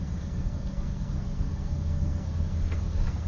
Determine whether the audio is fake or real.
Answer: fake